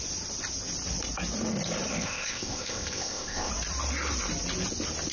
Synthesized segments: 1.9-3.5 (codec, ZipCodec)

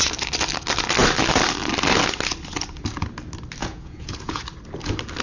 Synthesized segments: 3.6-4.4 (vocoder, Vocos)

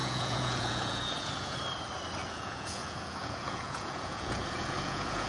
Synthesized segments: 0.0-1.6 (vocoder, Vocos); 2.2-5.3